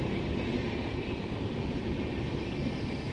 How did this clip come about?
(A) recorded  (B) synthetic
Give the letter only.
A